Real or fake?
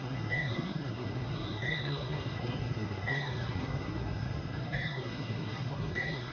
fake